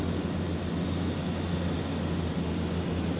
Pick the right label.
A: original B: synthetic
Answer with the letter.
A